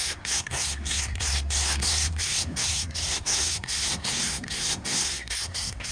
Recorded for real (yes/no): no